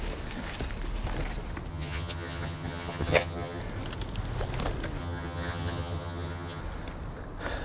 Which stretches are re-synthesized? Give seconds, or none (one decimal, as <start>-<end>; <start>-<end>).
1.7-3.6; 5.0-6.6